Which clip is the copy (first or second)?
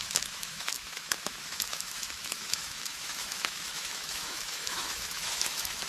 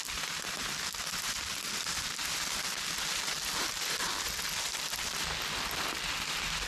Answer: first